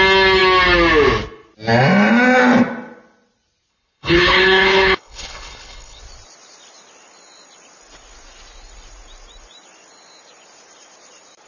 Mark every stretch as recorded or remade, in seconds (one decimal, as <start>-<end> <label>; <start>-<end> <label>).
0.0-3.7 recorded; 3.7-6.0 remade; 6.0-11.5 recorded